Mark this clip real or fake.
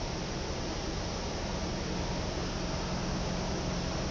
real